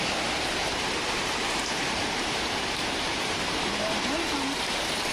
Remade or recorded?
remade